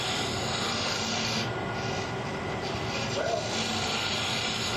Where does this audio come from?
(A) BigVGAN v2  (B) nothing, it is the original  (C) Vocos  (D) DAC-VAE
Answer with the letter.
B